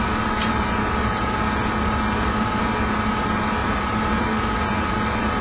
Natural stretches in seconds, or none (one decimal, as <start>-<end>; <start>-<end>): 0.0-3.6; 4.3-5.4